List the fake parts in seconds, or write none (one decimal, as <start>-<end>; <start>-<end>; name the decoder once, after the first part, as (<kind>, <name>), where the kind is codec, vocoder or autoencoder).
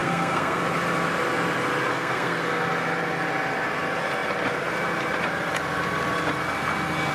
0.0-0.6 (codec, SNAC); 1.9-2.4